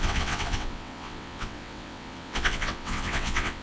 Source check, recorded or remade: remade